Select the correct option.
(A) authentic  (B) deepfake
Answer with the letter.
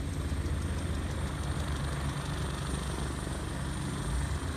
A